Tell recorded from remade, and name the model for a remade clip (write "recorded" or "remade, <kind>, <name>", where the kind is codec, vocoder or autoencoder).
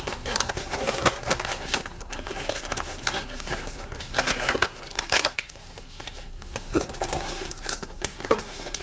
remade, codec, SNAC